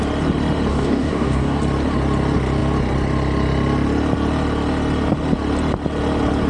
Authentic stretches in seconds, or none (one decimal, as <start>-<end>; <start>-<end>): 0.0-0.7; 1.6-6.5